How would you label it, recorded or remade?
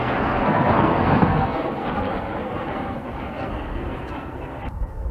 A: remade